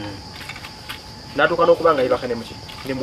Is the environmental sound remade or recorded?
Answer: remade